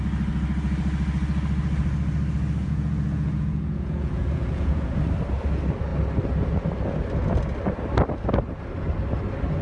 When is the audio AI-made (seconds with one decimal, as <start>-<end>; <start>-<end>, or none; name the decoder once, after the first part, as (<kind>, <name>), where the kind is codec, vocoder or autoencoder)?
2.6-5.0 (vocoder, Vocos)

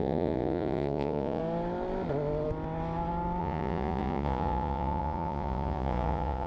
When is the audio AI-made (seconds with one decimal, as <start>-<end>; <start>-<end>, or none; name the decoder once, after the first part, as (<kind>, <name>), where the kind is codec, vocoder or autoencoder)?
0.0-1.4 (vocoder, Vocos); 3.4-6.5

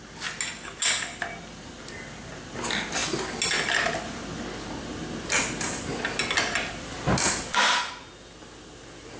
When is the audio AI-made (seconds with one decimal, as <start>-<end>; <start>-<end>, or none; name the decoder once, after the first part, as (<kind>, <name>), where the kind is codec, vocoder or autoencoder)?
none

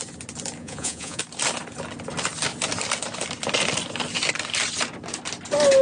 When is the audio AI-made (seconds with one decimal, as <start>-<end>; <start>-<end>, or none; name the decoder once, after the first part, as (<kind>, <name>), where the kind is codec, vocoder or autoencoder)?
0.6-1.2 (vocoder, Vocos)

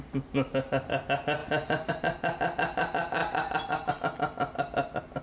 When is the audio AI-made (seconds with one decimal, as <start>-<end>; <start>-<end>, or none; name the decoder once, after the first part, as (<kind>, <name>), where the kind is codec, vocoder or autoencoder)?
none